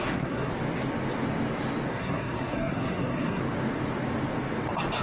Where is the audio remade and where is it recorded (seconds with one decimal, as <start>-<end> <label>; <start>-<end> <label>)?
0.0-0.5 remade; 0.5-1.9 recorded; 1.9-3.4 remade; 3.4-5.0 recorded